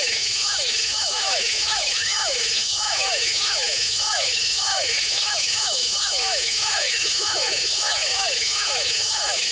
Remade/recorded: remade